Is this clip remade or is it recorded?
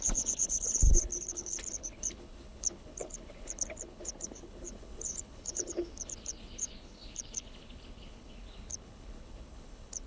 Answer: remade